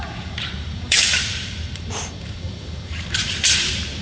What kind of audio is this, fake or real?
fake